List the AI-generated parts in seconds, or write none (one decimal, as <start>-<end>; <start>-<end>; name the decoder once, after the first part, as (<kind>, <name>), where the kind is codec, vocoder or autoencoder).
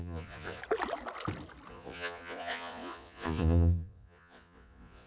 0.0-0.6 (vocoder, Vocos); 1.7-5.1